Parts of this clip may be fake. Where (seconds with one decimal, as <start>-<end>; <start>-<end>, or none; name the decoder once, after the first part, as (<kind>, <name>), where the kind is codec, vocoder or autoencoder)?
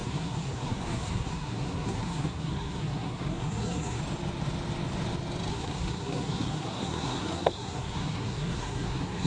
0.0-4.0 (codec, SNAC); 5.5-9.3